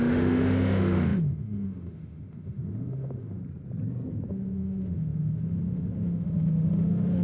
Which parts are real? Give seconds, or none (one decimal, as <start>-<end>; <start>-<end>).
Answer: 3.4-4.3